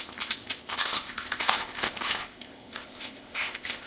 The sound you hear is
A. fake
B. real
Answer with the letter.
A